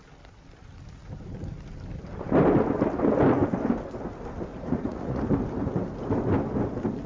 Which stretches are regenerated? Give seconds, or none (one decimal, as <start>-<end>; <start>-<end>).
4.5-5.2